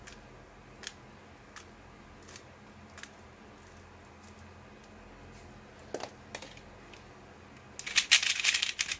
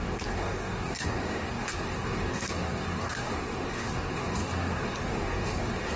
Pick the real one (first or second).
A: first